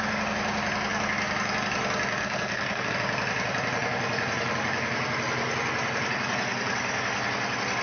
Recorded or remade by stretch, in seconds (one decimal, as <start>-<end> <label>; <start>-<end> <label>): 0.0-2.2 recorded; 2.2-2.9 remade; 2.9-7.8 recorded